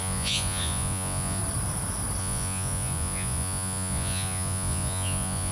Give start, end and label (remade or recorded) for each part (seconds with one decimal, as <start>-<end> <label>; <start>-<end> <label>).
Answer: 0.0-1.4 remade; 1.4-2.2 recorded; 2.2-5.5 remade